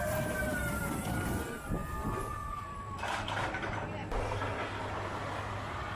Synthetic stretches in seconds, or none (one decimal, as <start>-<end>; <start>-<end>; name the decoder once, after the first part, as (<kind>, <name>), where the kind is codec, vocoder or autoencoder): none